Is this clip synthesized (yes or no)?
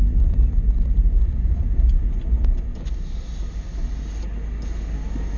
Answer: no